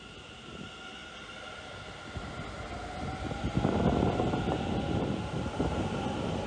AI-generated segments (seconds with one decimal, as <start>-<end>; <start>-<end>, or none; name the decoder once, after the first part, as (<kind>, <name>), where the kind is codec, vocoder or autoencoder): none

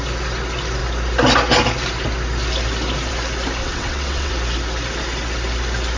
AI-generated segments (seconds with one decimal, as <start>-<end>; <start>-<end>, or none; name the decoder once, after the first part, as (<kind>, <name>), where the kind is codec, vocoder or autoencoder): 3.6-4.3 (vocoder, WaveNeXt)

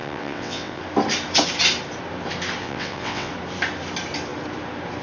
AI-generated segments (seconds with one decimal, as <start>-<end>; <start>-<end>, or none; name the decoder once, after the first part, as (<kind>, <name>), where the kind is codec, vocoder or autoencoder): 0.0-0.8 (vocoder, WaveNeXt); 2.6-3.3

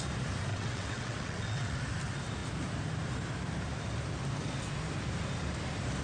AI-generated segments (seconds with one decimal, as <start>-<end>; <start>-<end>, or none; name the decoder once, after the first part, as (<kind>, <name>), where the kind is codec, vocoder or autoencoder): 0.5-1.8 (vocoder, WaveNeXt)

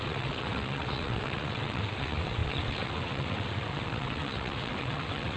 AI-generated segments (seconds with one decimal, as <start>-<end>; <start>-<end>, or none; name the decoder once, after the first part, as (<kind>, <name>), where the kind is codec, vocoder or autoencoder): 0.0-5.4 (vocoder, WaveNeXt)

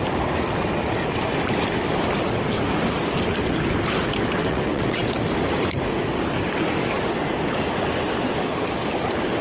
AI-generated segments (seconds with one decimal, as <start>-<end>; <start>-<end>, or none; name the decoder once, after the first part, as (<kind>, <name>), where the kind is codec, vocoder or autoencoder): 4.4-5.1 (vocoder, WaveNeXt)

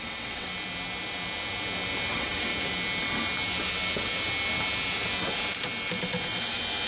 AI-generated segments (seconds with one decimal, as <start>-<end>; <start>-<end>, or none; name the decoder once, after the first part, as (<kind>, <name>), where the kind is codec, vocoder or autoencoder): 0.0-0.5 (vocoder, WaveNeXt); 2.1-2.5

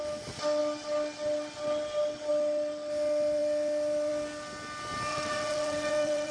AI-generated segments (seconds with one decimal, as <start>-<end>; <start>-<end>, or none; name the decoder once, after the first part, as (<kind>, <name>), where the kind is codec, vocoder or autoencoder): 5.1-6.3 (vocoder, WaveNeXt)